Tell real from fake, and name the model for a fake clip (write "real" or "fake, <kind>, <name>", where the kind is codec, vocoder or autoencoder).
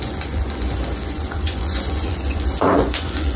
fake, vocoder, Vocos